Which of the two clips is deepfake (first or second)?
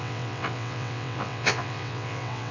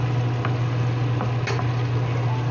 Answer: first